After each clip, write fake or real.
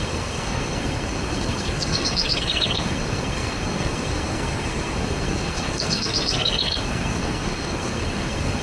fake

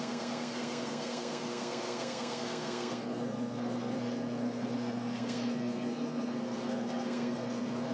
fake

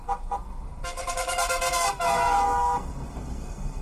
fake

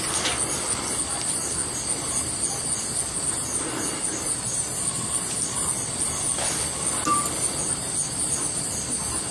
real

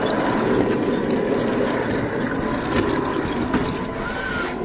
real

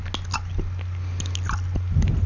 real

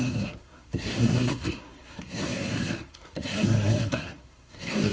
fake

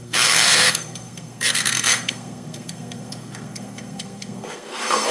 fake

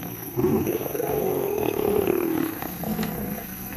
fake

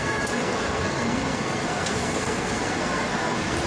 fake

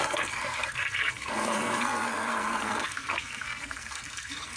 fake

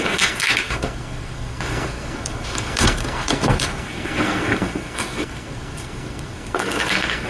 fake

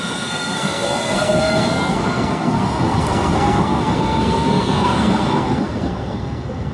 fake